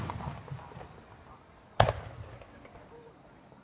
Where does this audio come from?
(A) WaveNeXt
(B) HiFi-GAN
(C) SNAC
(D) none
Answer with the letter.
D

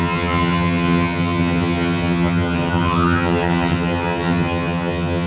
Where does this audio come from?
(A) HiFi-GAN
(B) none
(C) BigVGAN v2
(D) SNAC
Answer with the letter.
A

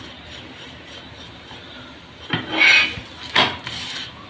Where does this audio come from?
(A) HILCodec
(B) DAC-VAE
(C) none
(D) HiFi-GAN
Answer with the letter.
C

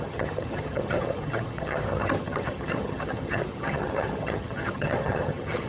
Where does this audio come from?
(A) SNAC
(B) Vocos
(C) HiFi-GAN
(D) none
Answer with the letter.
C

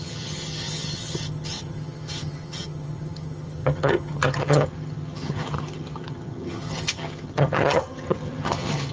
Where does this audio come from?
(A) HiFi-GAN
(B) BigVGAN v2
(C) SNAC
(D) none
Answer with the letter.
A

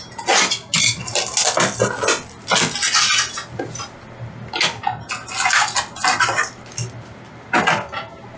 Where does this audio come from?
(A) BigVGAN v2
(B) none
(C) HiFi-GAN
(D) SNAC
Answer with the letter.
B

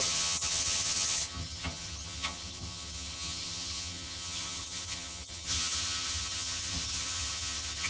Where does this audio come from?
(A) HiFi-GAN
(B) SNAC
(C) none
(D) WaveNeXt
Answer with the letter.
A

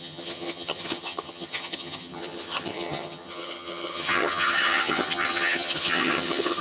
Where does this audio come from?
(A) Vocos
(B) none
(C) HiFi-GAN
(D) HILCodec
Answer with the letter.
C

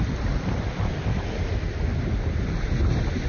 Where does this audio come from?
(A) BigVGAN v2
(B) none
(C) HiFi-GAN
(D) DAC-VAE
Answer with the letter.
B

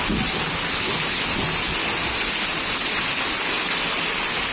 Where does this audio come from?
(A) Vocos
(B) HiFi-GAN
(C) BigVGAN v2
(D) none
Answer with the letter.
D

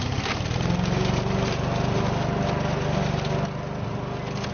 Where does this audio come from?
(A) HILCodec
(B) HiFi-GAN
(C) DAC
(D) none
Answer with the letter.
D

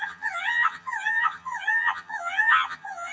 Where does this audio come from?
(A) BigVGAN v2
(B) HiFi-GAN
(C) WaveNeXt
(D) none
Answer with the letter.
B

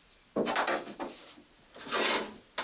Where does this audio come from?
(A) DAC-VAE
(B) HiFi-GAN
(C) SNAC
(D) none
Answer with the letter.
D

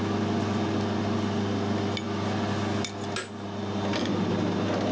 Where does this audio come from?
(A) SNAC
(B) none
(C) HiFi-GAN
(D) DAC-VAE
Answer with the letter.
B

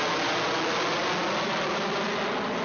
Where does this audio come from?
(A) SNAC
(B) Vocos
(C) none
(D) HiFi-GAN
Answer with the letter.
C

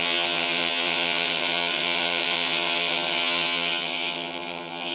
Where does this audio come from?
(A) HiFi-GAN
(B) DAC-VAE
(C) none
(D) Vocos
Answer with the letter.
A